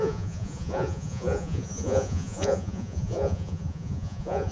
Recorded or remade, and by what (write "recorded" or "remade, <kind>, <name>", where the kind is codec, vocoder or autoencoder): remade, vocoder, Vocos